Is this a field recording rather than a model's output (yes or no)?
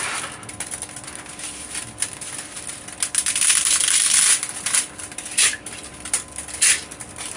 yes